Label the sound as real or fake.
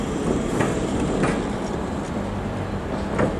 real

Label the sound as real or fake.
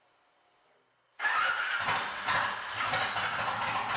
real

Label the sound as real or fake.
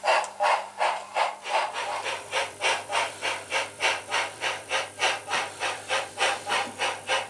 fake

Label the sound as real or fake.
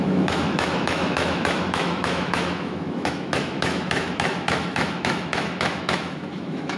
fake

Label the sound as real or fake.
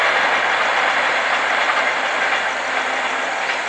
real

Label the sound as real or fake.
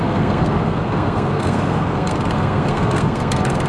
fake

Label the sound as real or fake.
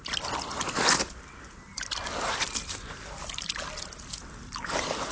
real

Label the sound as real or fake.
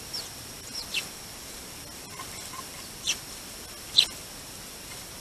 real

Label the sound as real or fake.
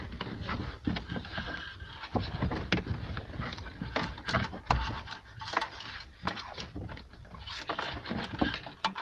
real